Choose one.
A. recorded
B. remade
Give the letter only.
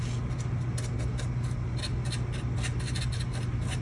A